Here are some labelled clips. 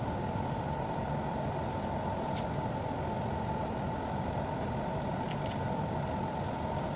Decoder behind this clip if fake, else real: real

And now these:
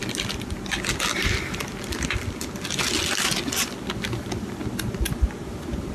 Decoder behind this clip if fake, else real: real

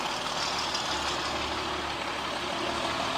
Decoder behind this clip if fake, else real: real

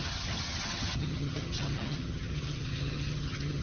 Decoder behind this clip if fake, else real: fake, vocoder, HiFi-GAN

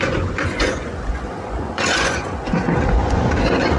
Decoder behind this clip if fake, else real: fake, vocoder, Vocos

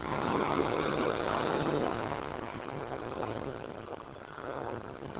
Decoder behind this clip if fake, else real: fake, vocoder, HiFi-GAN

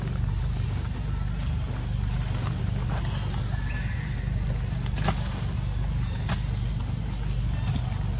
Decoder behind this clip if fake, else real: real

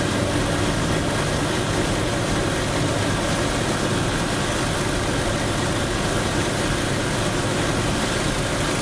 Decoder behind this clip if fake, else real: real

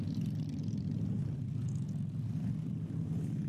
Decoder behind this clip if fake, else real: real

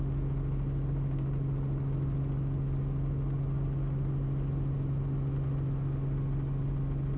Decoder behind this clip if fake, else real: real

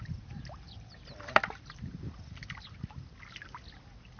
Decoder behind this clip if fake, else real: real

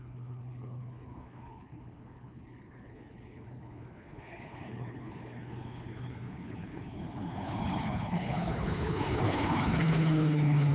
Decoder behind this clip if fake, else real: fake, codec, HILCodec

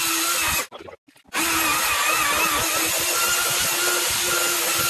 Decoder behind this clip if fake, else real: real